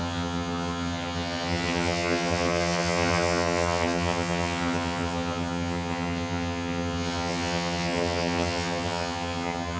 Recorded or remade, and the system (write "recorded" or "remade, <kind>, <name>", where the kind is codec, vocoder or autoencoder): remade, vocoder, HiFi-GAN